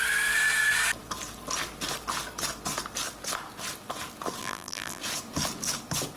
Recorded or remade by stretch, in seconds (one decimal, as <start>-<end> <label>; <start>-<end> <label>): 0.0-4.4 recorded; 4.4-5.0 remade; 5.0-6.2 recorded